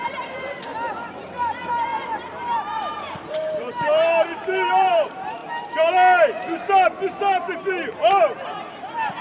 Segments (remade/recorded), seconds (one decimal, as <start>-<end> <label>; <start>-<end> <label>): 0.0-0.7 remade; 0.7-1.2 recorded; 1.2-5.4 remade; 5.4-8.7 recorded; 8.7-9.2 remade